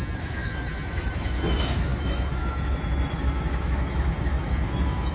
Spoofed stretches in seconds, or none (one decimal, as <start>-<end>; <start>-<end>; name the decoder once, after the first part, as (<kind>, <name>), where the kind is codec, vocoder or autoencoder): 0.0-5.1 (autoencoder, DAC-VAE)